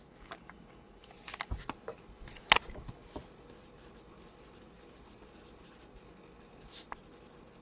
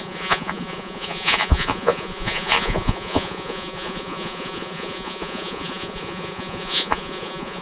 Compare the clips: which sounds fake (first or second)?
second